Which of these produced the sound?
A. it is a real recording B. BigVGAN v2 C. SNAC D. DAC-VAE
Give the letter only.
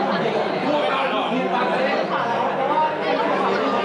A